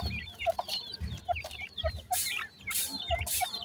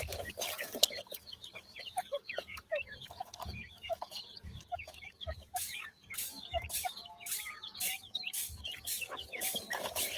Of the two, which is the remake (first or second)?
second